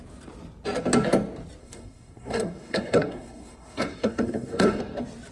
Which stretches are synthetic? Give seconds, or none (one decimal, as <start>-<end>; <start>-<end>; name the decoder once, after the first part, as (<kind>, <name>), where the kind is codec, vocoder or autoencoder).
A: 1.6-4.8 (codec, SNAC)